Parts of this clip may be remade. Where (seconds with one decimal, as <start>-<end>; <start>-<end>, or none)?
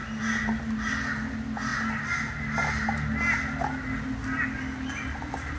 none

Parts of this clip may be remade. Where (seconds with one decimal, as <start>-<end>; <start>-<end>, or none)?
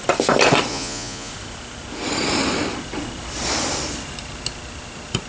0.7-1.3